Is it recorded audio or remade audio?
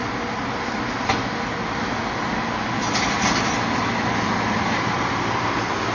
recorded